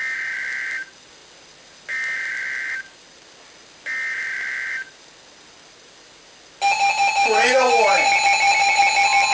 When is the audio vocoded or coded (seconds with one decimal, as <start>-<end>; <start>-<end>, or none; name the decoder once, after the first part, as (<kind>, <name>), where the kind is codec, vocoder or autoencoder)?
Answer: none